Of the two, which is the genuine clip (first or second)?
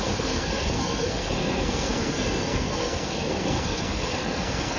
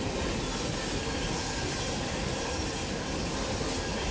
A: second